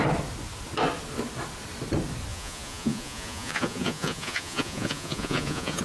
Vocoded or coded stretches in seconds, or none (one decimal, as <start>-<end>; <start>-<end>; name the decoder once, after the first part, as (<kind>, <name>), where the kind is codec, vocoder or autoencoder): 2.3-5.8 (vocoder, Vocos)